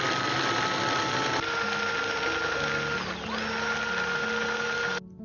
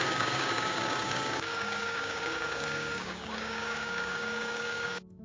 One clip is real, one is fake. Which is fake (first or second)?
second